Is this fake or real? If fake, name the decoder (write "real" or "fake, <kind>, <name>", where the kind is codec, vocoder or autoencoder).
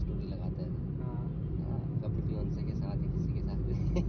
real